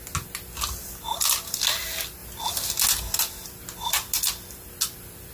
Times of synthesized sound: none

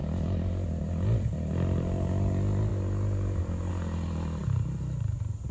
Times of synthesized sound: none

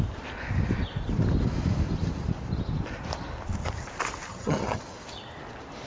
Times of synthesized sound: 4.3-4.8 (vocoder, HiFi-GAN)

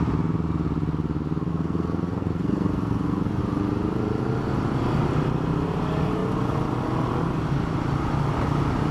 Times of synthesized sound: 1.5-3.4 (codec, SNAC)

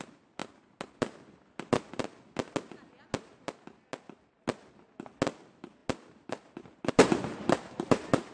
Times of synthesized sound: none

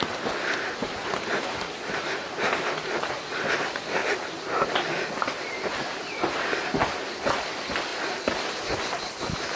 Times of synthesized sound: 0.8-3.4 (vocoder, BigVGAN v2)